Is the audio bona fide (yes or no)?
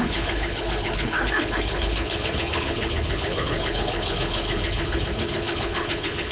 no